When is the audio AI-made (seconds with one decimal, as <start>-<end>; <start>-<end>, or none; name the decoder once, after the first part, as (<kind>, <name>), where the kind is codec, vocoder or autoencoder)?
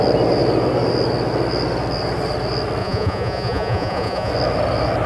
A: 2.8-4.3 (vocoder, Vocos)